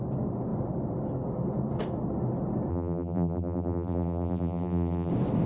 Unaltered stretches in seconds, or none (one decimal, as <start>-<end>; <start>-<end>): 0.0-2.7; 5.1-5.5